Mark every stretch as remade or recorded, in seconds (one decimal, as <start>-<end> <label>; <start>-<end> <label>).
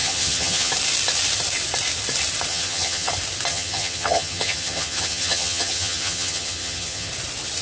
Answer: 0.0-0.7 remade; 0.7-2.5 recorded; 2.5-3.1 remade; 3.1-3.5 recorded; 3.5-7.1 remade; 7.1-7.6 recorded